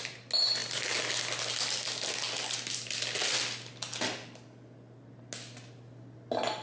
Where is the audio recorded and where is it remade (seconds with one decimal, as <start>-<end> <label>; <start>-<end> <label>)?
0.0-6.6 recorded